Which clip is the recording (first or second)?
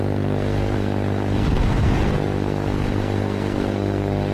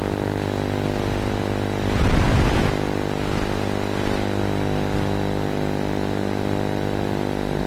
second